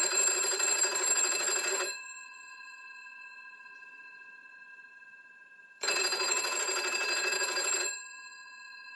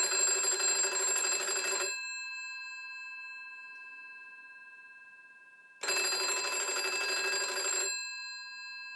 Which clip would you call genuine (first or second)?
second